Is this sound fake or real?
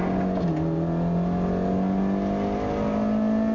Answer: real